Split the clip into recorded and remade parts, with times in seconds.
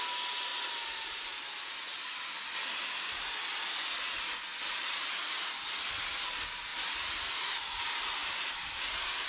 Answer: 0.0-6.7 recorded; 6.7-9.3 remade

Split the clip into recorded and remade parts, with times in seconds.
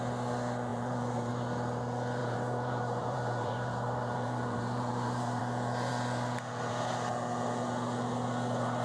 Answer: 0.0-0.7 recorded; 0.7-1.3 remade; 1.3-2.2 recorded; 2.2-5.4 remade; 5.4-8.8 recorded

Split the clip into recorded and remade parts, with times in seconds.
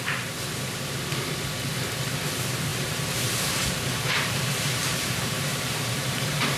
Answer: 0.0-2.7 recorded; 2.7-6.6 remade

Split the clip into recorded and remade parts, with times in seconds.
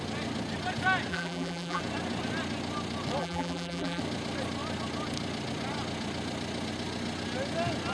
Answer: 0.0-1.1 recorded; 1.1-1.8 remade; 1.8-3.2 recorded; 3.2-4.0 remade; 4.0-7.9 recorded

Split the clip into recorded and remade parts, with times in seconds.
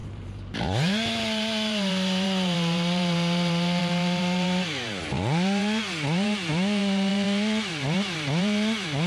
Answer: 0.0-9.1 remade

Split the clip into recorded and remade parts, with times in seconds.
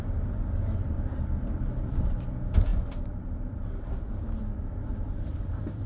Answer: 0.0-5.9 remade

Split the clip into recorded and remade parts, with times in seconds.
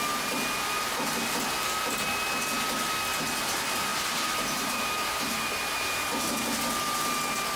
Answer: 0.0-3.9 recorded; 3.9-6.1 remade; 6.1-7.6 recorded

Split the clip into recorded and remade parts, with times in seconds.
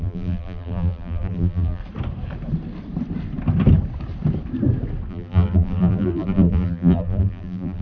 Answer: 0.0-1.8 remade; 1.8-5.1 recorded; 5.1-7.8 remade